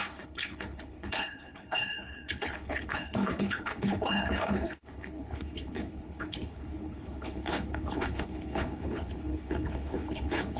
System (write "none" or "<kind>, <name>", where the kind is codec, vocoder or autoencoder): codec, HILCodec